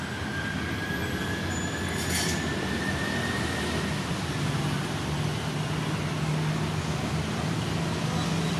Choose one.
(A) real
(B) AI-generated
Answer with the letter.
A